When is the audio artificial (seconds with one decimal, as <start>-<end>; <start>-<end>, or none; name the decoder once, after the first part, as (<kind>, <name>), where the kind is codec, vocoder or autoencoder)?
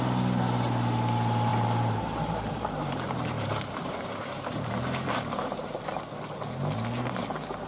1.5-5.7 (vocoder, BigVGAN v2)